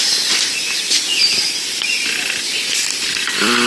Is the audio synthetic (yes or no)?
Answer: no